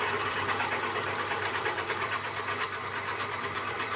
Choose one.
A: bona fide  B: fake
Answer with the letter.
B